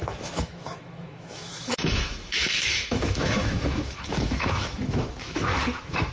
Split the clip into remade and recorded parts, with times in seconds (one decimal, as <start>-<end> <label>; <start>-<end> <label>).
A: 0.0-6.1 remade